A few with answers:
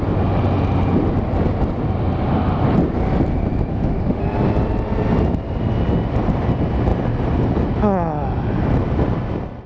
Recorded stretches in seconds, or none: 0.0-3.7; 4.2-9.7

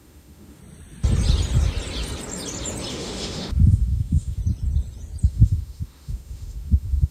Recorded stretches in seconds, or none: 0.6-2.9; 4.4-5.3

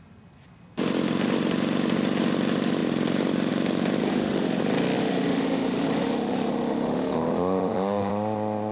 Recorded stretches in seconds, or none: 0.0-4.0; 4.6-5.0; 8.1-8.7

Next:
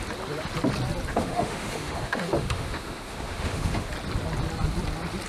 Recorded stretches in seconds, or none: 0.0-1.1; 3.9-5.3

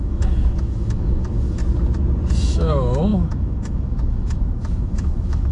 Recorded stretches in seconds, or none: 1.6-2.4